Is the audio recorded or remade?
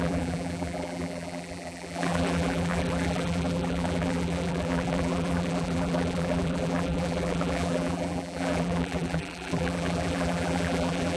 remade